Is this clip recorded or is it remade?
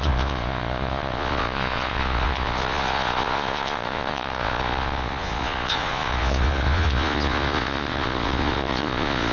remade